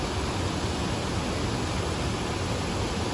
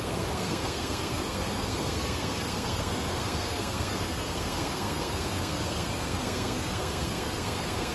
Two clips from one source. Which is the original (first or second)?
first